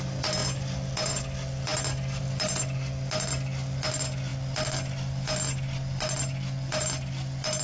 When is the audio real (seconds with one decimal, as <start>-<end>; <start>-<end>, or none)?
0.0-7.6